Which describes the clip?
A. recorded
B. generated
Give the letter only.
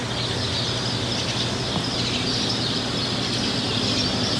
A